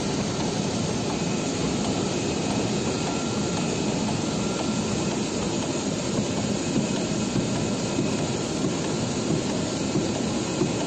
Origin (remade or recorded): remade